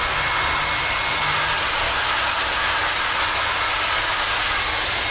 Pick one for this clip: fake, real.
real